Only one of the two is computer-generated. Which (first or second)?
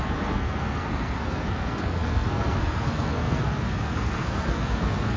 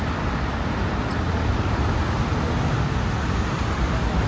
first